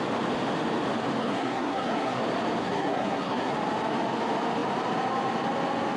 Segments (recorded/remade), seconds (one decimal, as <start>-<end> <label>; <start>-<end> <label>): 0.0-1.2 recorded; 1.2-2.2 remade; 2.2-2.6 recorded; 2.6-3.5 remade; 3.5-6.0 recorded